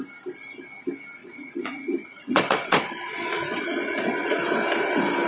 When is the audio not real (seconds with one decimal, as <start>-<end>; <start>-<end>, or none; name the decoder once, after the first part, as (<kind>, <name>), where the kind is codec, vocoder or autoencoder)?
1.2-4.4 (vocoder, Vocos)